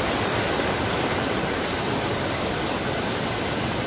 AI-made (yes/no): no